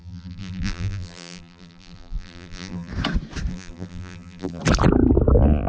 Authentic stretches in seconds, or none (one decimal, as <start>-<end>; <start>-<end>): 2.9-3.5; 4.6-5.7